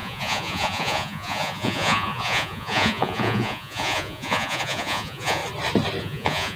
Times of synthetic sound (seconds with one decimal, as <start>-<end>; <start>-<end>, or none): 0.0-5.4; 6.0-6.6